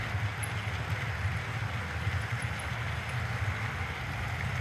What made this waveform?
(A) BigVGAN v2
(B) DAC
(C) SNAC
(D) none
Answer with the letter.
D